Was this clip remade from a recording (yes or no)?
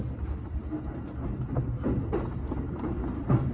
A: no